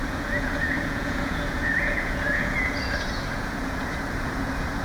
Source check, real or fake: fake